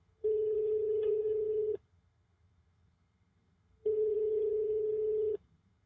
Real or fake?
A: fake